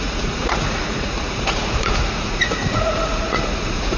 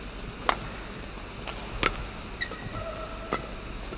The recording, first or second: second